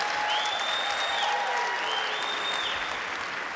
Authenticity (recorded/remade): recorded